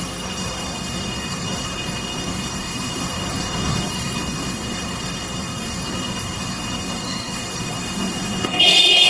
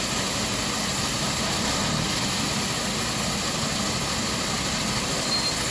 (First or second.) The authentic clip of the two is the second